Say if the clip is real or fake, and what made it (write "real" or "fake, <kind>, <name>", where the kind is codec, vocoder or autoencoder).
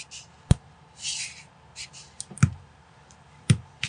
real